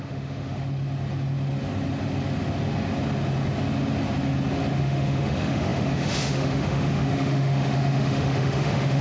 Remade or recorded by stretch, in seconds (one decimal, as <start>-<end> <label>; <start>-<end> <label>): 0.0-0.6 remade; 0.6-4.8 recorded; 4.8-9.0 remade